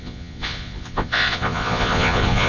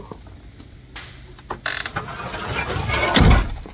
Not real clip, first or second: first